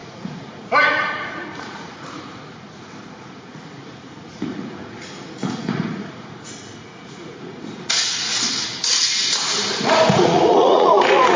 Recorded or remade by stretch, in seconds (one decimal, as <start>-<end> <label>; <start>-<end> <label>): 0.0-8.3 remade; 8.3-9.7 recorded; 9.7-11.4 remade